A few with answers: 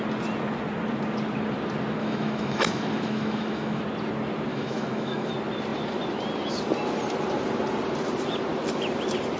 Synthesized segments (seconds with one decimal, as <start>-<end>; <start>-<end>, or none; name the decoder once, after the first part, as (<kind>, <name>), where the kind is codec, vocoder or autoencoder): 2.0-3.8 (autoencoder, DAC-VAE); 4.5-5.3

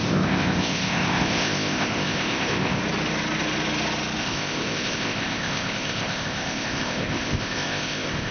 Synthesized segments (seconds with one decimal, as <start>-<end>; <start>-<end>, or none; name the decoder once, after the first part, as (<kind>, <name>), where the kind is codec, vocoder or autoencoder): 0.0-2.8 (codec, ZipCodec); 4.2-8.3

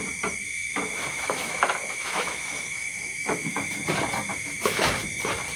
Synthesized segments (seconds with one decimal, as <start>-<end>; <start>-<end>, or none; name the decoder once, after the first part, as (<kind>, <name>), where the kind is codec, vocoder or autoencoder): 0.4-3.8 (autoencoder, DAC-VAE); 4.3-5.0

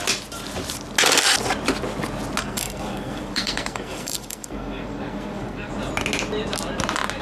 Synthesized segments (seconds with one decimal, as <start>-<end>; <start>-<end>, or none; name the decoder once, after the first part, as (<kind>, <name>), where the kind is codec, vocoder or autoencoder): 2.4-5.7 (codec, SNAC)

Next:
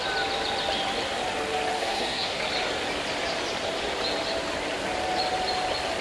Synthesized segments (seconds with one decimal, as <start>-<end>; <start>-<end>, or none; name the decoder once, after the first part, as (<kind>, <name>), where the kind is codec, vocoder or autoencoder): 1.8-2.4 (codec, SNAC)